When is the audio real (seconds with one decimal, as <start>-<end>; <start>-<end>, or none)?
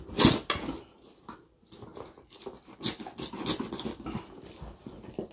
0.0-5.3